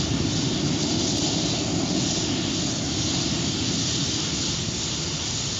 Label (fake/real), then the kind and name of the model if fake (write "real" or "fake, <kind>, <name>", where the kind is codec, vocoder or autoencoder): real